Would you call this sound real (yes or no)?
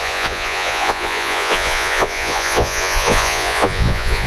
no